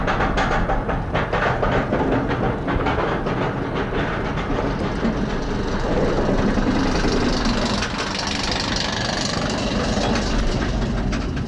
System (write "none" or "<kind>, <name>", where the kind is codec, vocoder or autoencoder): none